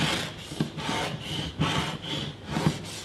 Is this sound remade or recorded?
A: recorded